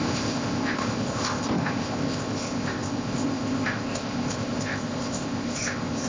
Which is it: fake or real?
fake